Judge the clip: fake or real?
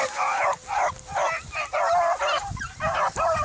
real